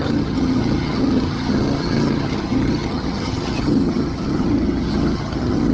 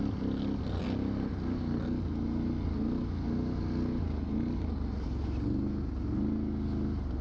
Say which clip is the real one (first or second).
second